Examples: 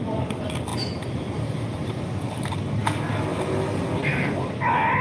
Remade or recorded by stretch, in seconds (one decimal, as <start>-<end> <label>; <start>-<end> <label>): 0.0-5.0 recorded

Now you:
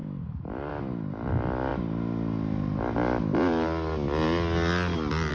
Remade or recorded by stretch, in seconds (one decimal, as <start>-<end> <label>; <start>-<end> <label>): 0.0-5.3 recorded

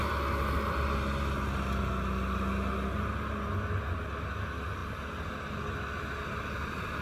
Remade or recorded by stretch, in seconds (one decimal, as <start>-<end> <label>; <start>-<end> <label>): 0.0-7.0 recorded

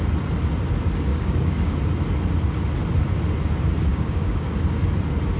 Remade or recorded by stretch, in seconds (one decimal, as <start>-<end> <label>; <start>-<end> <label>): 0.0-1.1 recorded; 1.1-1.7 remade; 1.7-3.9 recorded; 3.9-4.5 remade; 4.5-5.4 recorded

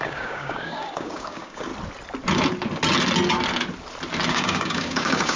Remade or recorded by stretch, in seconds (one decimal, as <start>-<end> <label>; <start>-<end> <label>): 0.0-1.7 remade; 1.7-4.3 recorded; 4.3-5.4 remade

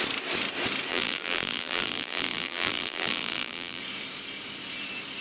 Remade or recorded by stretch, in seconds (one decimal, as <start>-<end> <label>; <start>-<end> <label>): 0.0-0.9 recorded; 0.9-3.8 remade; 3.8-5.2 recorded

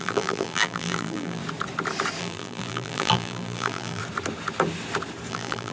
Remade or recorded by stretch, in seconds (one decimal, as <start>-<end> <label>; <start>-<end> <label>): 0.0-1.4 remade; 1.4-2.2 recorded; 2.2-4.0 remade; 4.0-5.3 recorded; 5.3-5.7 remade

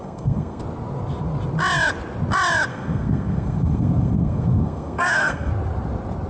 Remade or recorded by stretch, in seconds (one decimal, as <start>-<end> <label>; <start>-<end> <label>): 0.0-0.6 remade; 0.6-2.7 recorded; 2.7-5.5 remade; 5.5-6.3 recorded